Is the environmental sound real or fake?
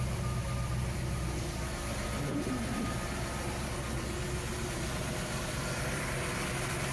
real